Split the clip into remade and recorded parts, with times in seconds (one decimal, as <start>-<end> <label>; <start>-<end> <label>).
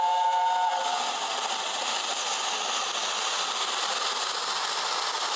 0.0-5.4 recorded